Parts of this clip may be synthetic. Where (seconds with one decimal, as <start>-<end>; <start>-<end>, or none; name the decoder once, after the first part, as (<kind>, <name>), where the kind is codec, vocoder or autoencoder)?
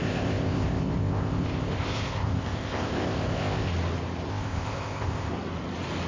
0.0-3.7 (codec, ZipCodec); 4.3-5.3